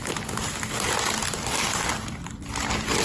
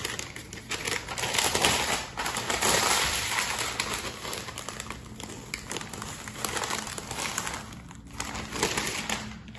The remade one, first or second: first